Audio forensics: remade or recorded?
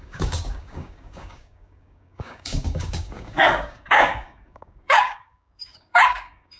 remade